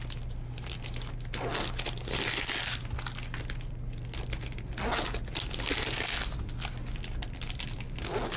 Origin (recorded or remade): recorded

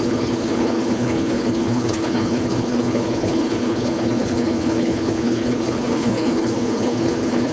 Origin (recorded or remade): remade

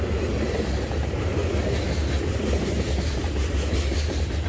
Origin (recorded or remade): recorded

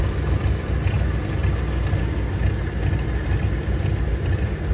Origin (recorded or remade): recorded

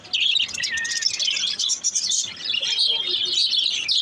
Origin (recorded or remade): recorded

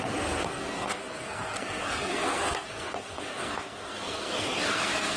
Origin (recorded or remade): remade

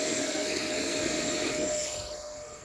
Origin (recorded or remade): remade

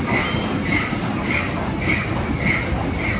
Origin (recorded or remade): recorded